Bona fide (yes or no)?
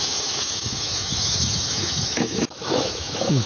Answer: no